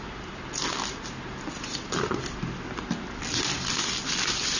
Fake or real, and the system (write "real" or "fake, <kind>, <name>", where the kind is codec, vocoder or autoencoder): real